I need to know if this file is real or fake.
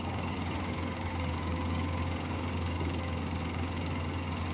fake